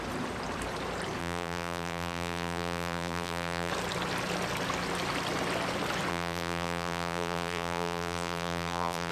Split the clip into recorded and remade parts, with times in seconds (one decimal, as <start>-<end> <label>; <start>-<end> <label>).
0.0-1.2 recorded; 1.2-3.7 remade; 3.7-6.1 recorded; 6.1-9.1 remade

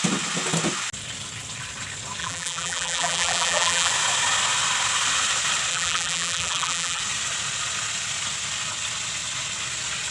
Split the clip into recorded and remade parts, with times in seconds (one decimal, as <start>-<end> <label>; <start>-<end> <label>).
0.0-2.2 recorded; 2.2-3.9 remade; 3.9-5.7 recorded; 5.7-7.0 remade; 7.0-10.1 recorded

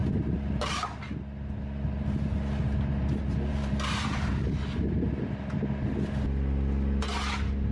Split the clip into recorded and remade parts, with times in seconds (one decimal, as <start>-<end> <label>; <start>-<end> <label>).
0.0-3.5 recorded; 3.5-4.3 remade; 4.3-7.7 recorded

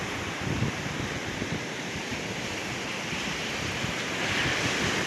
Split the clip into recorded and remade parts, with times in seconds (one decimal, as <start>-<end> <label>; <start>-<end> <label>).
0.0-5.1 recorded

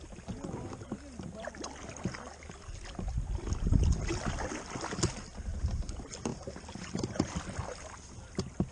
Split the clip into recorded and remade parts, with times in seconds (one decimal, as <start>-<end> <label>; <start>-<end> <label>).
0.0-6.3 recorded; 6.3-7.6 remade; 7.6-8.7 recorded

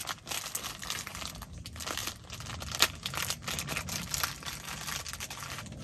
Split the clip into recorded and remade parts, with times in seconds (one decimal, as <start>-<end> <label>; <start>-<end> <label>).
0.0-1.3 remade; 1.3-2.0 recorded; 2.0-5.0 remade; 5.0-5.8 recorded

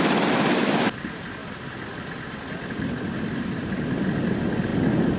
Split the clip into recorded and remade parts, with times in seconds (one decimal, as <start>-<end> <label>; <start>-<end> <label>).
0.0-5.2 recorded